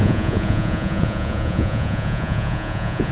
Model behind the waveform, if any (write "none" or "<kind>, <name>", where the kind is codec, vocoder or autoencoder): vocoder, Vocos